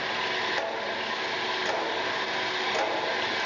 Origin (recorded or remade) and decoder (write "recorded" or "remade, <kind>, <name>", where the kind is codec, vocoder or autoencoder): recorded